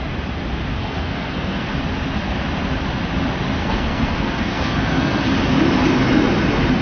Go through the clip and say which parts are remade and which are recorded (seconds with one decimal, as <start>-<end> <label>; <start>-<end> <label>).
0.0-0.8 recorded; 0.8-1.8 remade; 1.8-3.6 recorded; 3.6-5.2 remade; 5.2-6.8 recorded